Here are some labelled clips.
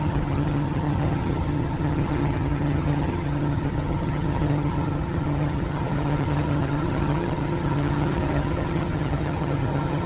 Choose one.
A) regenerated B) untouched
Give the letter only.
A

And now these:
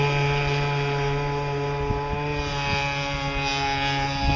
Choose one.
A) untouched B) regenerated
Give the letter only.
A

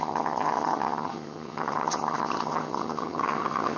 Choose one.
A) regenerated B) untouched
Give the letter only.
A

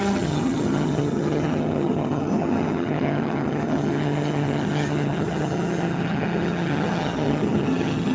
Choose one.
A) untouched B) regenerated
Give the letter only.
B